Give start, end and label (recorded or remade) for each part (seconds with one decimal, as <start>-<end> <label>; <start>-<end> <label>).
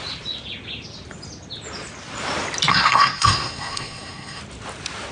0.0-2.7 recorded; 2.7-4.4 remade; 4.4-5.1 recorded